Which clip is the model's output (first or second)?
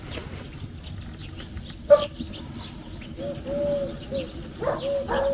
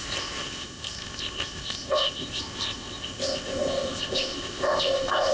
second